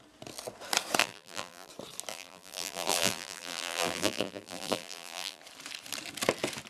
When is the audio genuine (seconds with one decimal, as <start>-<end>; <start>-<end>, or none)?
0.0-1.0; 1.7-2.1; 5.4-6.7